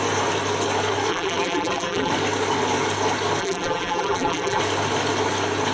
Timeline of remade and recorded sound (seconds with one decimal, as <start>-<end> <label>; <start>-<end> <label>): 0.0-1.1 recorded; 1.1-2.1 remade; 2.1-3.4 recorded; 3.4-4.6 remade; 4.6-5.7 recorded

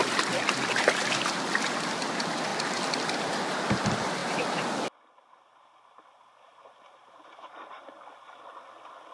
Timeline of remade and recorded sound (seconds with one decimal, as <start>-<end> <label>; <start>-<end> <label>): 0.0-4.2 recorded; 4.2-8.1 remade; 8.1-9.1 recorded

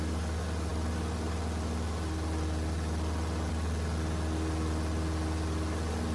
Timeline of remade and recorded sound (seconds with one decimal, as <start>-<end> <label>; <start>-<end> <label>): 0.0-6.1 recorded

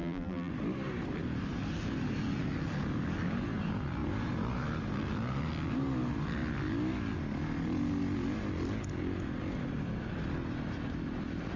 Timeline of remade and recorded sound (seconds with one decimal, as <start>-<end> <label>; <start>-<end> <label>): 0.0-0.5 remade; 0.5-11.6 recorded

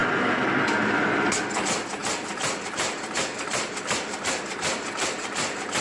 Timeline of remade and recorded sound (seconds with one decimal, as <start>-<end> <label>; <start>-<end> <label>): 0.0-2.0 recorded; 2.0-5.8 remade